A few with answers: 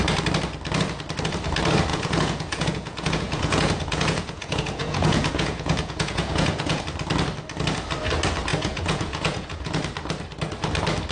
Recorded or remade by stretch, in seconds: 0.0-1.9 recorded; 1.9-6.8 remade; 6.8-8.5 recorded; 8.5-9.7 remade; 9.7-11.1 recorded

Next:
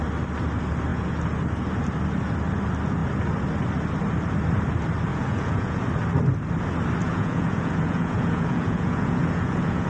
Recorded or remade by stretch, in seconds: 0.0-5.1 recorded; 5.1-5.8 remade; 5.8-7.0 recorded; 7.0-9.9 remade

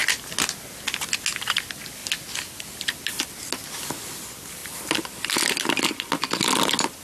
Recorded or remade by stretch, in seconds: 0.0-7.0 recorded

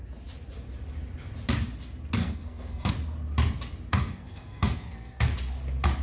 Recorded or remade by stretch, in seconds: 0.0-2.2 recorded; 2.2-2.9 remade; 2.9-3.9 recorded; 3.9-5.3 remade; 5.3-6.0 recorded

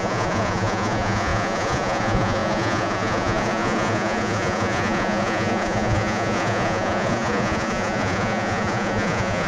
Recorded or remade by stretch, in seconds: 0.0-9.5 remade

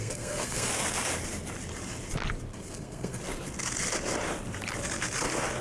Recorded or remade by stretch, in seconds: 0.0-0.7 remade; 0.7-2.5 recorded; 2.5-3.2 remade; 3.2-5.6 recorded

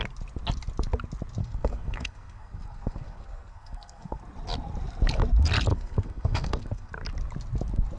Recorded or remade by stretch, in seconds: 0.0-1.4 recorded; 1.4-4.2 remade; 4.2-5.7 recorded; 5.7-6.9 remade; 6.9-8.0 recorded